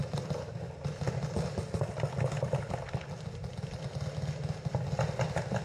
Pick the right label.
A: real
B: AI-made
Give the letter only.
A